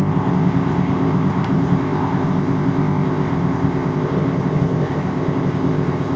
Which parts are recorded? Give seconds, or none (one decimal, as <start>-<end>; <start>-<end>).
none